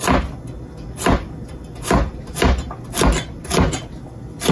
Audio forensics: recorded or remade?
recorded